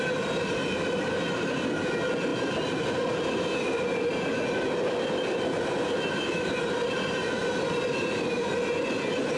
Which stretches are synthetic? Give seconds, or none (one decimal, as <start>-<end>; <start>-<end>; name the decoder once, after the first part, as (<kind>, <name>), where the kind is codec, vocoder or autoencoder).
none